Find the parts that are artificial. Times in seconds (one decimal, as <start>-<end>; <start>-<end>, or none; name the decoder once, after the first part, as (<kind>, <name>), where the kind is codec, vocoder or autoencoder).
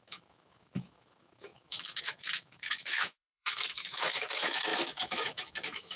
0.0-6.0 (autoencoder, DAC-VAE)